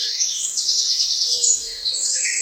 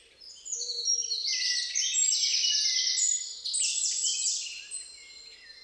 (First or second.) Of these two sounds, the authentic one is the second